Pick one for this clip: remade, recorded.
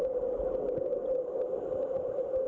recorded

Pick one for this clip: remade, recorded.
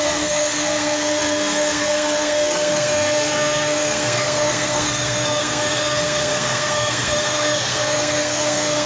remade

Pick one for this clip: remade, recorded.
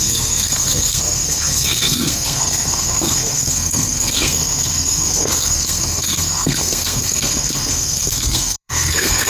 remade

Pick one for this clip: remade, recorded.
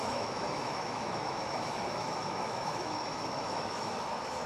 remade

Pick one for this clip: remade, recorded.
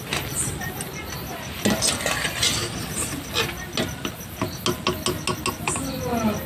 recorded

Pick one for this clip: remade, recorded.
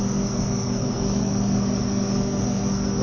remade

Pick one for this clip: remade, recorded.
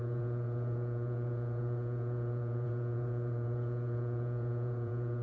remade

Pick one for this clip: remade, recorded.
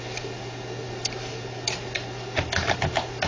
recorded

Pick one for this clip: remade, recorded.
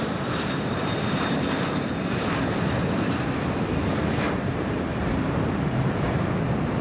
remade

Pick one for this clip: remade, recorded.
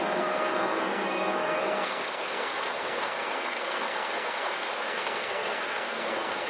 remade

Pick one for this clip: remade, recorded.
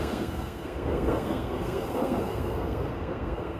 remade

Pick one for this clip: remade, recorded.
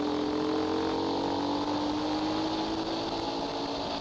recorded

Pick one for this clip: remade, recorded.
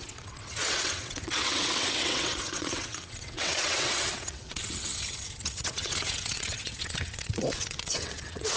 remade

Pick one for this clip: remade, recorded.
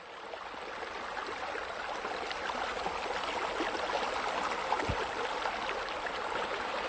recorded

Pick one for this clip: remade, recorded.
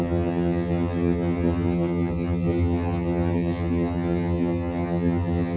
remade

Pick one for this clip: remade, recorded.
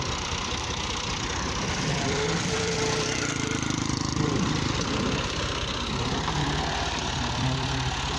remade